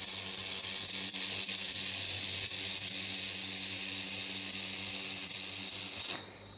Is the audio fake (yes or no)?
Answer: no